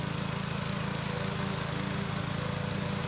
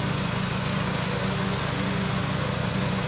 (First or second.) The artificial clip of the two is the second